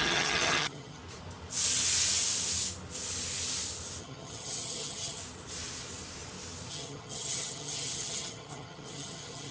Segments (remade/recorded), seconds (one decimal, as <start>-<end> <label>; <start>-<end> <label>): 0.0-1.0 remade; 1.0-4.0 recorded; 4.0-5.2 remade; 5.2-6.7 recorded; 6.7-9.5 remade